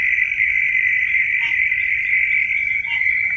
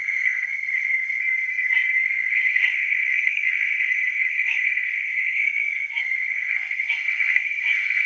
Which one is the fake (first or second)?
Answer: second